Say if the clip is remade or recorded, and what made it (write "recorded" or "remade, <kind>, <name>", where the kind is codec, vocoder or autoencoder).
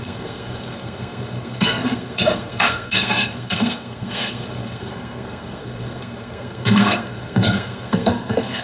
remade, codec, SNAC